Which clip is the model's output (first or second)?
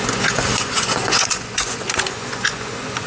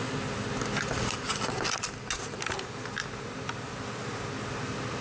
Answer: first